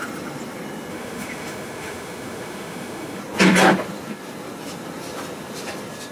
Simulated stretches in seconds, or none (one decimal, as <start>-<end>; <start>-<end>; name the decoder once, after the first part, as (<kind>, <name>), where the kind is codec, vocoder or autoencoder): 0.9-3.2 (autoencoder, DAC-VAE)